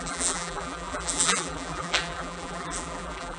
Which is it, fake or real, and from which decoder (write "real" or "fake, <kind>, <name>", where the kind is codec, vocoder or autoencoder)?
fake, vocoder, BigVGAN v2